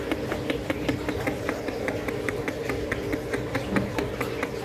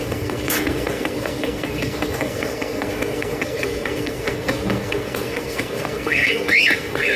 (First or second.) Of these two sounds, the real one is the first